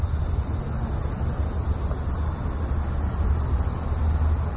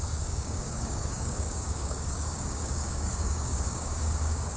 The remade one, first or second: second